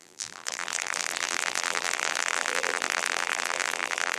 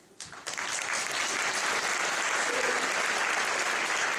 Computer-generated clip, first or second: first